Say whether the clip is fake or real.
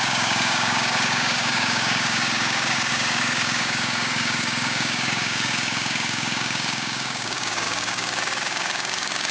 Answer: fake